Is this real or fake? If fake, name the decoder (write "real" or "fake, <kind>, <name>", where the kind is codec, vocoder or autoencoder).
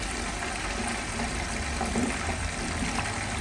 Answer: fake, vocoder, BigVGAN v2